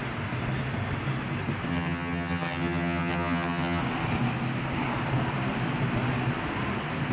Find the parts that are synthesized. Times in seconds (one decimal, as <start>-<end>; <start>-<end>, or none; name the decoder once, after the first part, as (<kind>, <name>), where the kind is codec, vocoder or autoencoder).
1.7-3.8 (vocoder, HiFi-GAN)